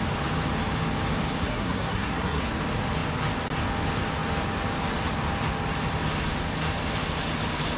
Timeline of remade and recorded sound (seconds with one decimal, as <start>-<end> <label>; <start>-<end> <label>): 0.0-1.4 recorded; 1.4-2.4 remade; 2.4-7.8 recorded